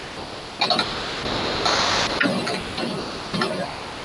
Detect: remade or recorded recorded